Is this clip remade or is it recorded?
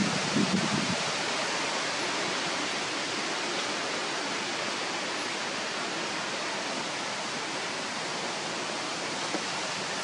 recorded